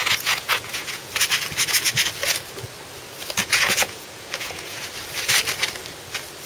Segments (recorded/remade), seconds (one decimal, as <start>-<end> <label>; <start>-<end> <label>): 0.0-1.1 remade; 1.1-3.4 recorded; 3.4-4.9 remade; 4.9-6.5 recorded